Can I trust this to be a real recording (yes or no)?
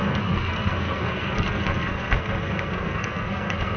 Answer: no